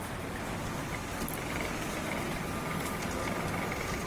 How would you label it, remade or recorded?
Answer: recorded